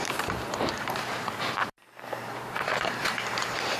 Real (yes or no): no